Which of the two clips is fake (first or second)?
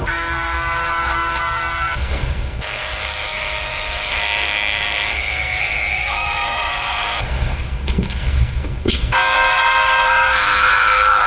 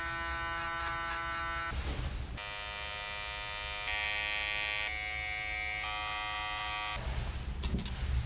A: first